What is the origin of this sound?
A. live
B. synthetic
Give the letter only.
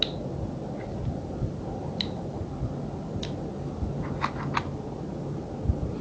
A